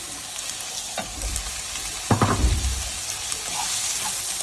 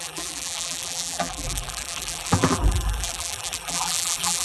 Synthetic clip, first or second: second